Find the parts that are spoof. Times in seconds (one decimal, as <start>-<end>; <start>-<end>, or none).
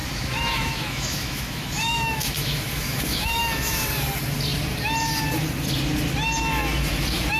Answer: 0.0-3.8